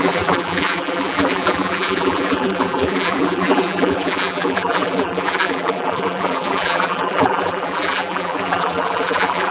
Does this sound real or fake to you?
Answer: fake